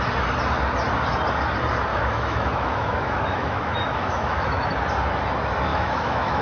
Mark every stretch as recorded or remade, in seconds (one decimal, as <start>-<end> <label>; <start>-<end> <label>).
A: 0.0-1.9 recorded; 1.9-4.7 remade; 4.7-5.7 recorded; 5.7-6.4 remade